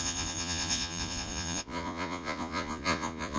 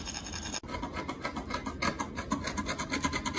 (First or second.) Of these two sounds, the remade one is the first